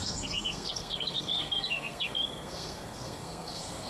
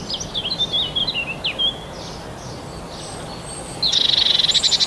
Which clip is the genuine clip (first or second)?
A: second